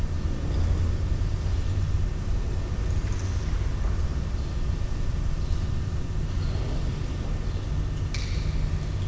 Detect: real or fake real